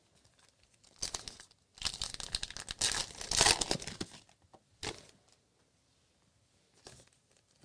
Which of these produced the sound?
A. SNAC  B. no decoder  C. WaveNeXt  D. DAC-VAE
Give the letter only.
B